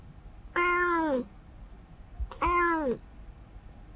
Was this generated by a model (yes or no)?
no